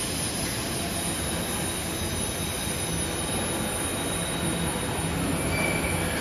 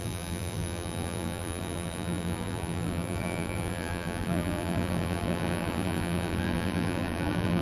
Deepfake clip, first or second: second